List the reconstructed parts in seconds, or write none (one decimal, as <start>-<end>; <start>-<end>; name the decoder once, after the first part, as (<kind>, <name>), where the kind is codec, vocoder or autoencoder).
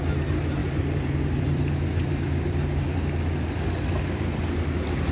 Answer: 0.6-3.7 (vocoder, BigVGAN v2)